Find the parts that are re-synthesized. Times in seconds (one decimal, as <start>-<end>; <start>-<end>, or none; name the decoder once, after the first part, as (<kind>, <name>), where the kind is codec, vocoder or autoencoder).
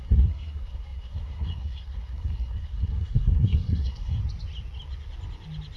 0.0-4.2 (codec, SNAC)